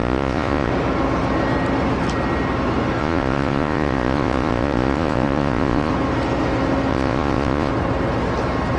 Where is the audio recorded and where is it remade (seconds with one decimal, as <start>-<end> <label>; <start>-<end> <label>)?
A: 0.0-0.7 remade; 0.7-3.0 recorded; 3.0-5.9 remade; 5.9-6.9 recorded; 6.9-7.7 remade; 7.7-8.8 recorded